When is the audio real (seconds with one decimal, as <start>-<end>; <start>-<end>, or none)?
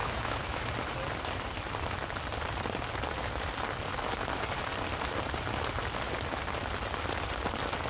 0.7-7.9